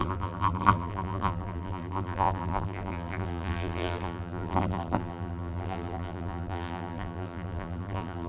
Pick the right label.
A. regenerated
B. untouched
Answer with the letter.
A